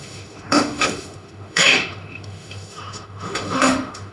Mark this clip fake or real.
fake